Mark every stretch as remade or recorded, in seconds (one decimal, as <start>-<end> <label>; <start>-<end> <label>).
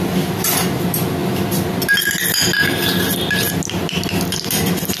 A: 0.0-5.0 recorded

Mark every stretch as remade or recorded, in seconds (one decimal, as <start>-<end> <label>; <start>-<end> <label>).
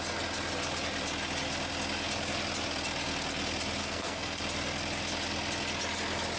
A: 0.0-3.8 recorded; 3.8-4.4 remade; 4.4-6.4 recorded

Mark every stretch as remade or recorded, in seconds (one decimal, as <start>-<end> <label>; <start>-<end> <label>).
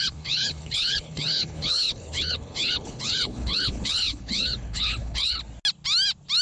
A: 0.0-5.4 remade; 5.4-6.4 recorded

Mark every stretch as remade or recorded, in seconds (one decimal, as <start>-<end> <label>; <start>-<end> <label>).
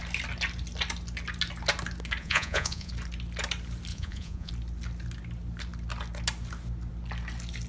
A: 0.0-2.2 recorded; 2.2-2.9 remade; 2.9-3.9 recorded; 3.9-4.5 remade; 4.5-7.7 recorded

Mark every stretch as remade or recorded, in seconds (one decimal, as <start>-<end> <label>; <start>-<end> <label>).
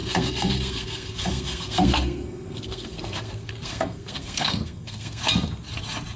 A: 0.0-5.2 remade; 5.2-6.2 recorded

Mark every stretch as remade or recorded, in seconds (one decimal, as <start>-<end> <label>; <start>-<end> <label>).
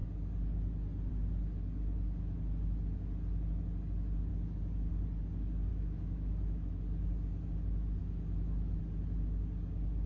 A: 0.0-5.7 recorded; 5.7-6.8 remade; 6.8-8.0 recorded; 8.0-8.8 remade; 8.8-10.1 recorded